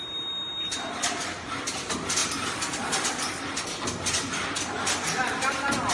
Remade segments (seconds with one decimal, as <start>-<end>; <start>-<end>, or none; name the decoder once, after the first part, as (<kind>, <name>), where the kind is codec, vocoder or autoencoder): none